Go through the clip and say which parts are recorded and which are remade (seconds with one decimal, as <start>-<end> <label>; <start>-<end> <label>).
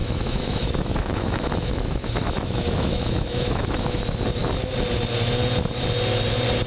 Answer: 0.0-4.0 remade; 4.0-6.7 recorded